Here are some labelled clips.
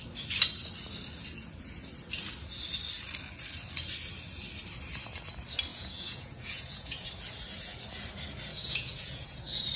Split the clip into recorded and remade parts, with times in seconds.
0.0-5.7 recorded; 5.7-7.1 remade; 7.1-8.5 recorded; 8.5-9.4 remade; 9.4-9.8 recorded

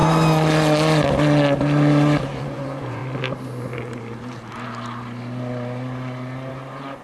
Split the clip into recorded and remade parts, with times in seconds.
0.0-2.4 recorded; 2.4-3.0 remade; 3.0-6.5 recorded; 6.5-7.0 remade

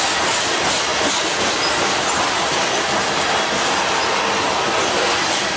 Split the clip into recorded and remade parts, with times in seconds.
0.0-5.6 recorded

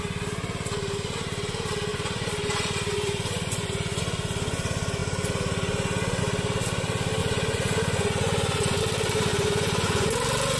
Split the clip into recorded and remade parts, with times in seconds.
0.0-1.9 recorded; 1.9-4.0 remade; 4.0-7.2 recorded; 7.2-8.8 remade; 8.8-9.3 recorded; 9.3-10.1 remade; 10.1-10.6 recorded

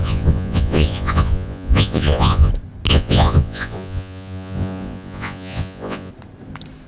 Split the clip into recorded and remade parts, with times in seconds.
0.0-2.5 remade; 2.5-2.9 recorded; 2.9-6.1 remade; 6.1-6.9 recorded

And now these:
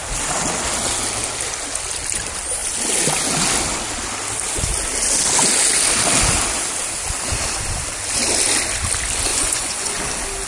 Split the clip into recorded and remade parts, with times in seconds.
0.0-9.3 recorded; 9.3-10.0 remade; 10.0-10.5 recorded